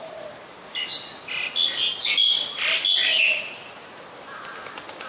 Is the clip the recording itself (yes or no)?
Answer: yes